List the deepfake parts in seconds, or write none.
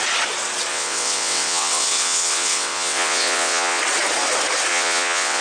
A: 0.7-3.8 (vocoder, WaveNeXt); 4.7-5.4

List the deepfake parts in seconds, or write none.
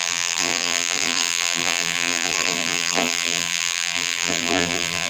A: 0.0-5.1 (vocoder, BigVGAN v2)